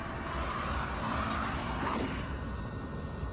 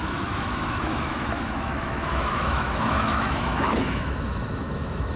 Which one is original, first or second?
first